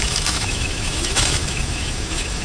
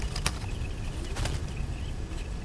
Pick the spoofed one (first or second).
first